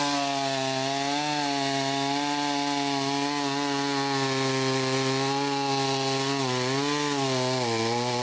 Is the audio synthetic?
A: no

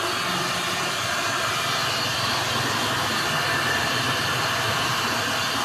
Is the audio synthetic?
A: yes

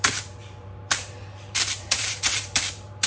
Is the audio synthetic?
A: yes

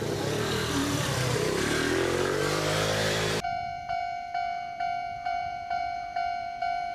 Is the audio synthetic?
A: yes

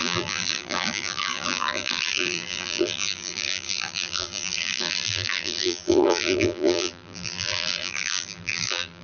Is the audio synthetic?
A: yes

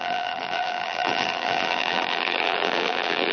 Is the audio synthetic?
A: yes